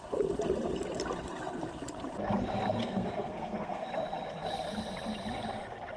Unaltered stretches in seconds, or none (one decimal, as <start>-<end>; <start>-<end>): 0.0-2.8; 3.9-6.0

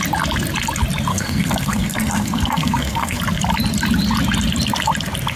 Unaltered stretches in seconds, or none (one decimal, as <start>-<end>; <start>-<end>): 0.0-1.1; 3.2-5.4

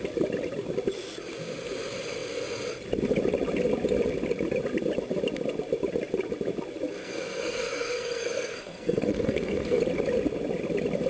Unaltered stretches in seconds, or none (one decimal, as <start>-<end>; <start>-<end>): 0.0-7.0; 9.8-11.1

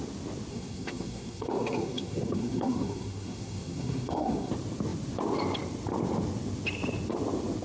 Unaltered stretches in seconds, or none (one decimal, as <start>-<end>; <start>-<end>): 0.0-0.5; 4.5-7.6

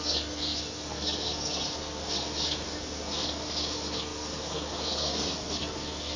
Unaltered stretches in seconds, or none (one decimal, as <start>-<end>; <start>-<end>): none

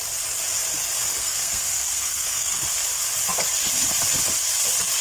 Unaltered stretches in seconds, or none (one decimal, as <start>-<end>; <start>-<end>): 0.0-1.2; 2.6-5.0